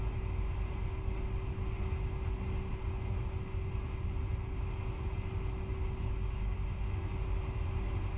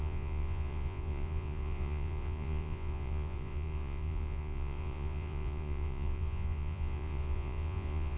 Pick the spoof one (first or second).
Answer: second